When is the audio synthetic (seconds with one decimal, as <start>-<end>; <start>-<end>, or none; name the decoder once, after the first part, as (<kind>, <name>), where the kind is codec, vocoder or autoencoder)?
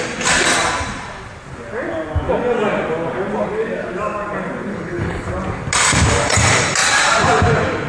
4.7-5.3 (codec, HILCodec)